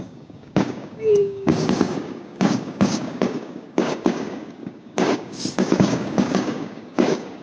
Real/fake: fake